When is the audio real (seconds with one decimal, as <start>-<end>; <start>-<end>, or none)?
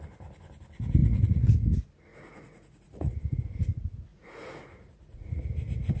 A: 0.0-1.0; 1.5-2.1; 3.1-4.1; 5.4-6.0